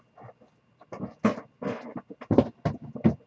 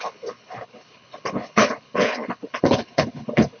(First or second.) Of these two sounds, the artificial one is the second